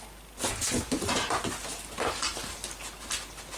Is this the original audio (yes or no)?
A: yes